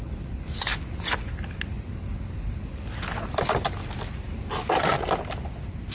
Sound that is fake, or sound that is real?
real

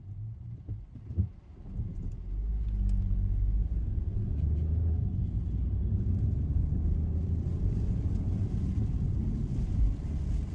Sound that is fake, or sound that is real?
real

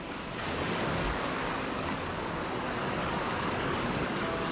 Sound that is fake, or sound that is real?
fake